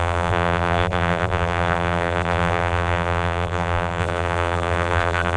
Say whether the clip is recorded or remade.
remade